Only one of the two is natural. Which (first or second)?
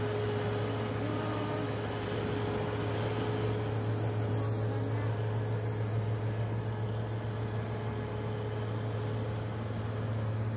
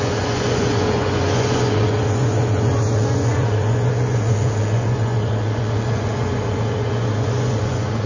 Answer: first